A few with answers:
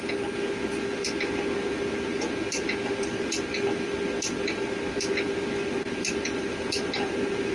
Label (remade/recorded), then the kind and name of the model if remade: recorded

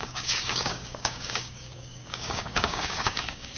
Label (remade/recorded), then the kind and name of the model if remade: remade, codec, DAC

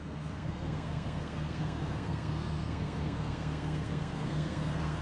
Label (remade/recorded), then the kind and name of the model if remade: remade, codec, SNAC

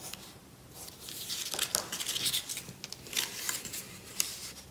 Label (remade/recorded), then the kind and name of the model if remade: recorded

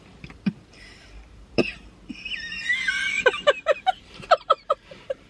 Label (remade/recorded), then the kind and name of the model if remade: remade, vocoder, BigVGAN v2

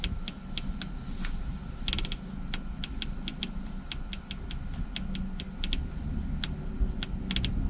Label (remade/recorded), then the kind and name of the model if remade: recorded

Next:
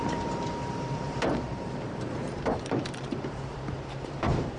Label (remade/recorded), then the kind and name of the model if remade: remade, vocoder, BigVGAN v2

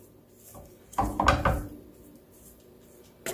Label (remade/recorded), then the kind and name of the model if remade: recorded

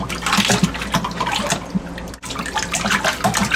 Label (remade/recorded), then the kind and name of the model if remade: recorded